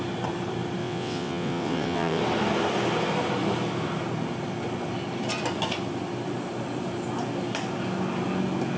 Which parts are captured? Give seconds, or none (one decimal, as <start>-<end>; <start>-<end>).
0.0-0.8; 2.2-8.8